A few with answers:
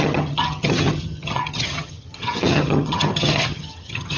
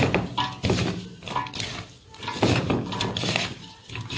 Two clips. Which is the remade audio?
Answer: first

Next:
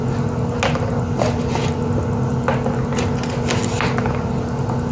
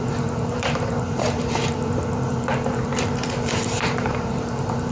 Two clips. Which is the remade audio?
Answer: second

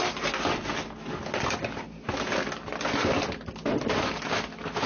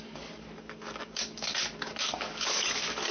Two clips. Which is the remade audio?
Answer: second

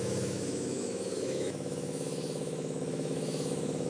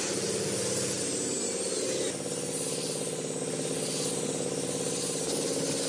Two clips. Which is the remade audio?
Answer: first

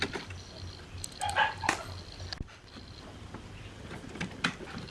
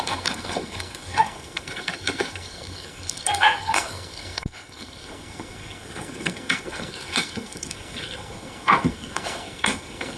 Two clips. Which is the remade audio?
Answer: second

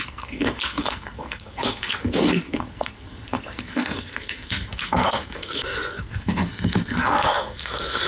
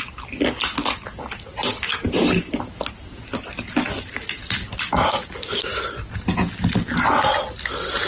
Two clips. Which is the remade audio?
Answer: first